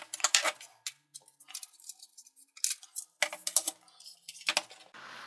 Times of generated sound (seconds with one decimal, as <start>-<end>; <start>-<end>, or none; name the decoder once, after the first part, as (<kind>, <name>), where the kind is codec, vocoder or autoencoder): none

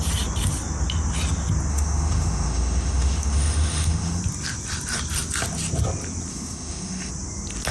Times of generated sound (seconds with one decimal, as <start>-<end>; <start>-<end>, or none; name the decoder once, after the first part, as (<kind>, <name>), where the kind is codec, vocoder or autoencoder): 1.7-4.2 (autoencoder, DAC-VAE); 6.3-7.1

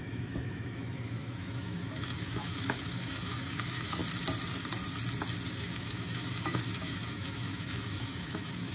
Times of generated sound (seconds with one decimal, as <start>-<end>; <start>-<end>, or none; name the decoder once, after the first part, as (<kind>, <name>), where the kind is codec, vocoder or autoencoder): 0.0-4.0 (autoencoder, DAC-VAE); 5.6-8.7